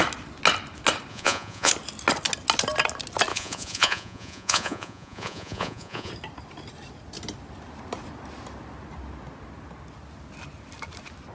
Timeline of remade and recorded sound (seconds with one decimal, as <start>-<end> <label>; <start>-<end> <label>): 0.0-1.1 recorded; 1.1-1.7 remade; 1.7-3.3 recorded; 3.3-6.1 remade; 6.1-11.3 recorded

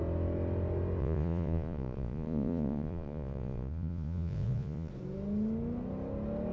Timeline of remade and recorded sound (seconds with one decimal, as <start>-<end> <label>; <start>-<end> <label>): 0.0-1.0 recorded; 1.0-4.9 remade; 4.9-6.5 recorded

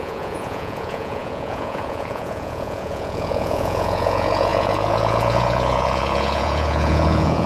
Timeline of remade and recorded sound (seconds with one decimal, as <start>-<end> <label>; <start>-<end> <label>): 0.0-7.5 remade